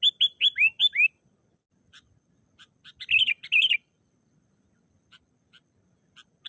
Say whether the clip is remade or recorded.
recorded